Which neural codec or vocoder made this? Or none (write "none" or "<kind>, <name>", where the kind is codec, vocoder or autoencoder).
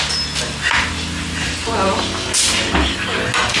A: none